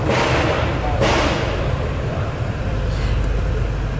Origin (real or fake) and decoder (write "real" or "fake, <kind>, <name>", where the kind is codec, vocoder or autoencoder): real